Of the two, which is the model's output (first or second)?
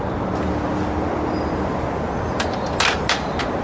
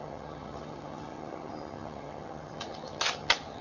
second